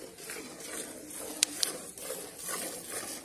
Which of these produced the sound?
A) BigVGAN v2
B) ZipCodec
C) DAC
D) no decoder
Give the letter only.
D